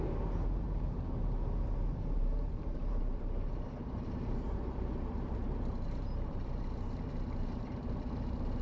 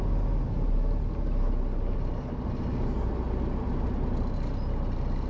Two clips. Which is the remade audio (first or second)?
first